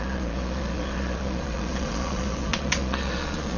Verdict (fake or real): fake